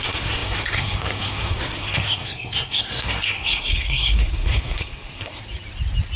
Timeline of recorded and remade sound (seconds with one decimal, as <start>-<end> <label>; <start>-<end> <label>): 0.0-5.4 remade; 5.4-6.2 recorded